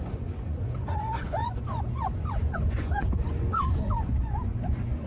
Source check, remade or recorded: remade